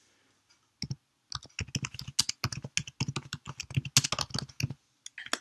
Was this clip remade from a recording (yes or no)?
no